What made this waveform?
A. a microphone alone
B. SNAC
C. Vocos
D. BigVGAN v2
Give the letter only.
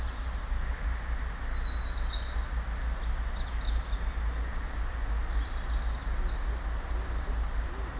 A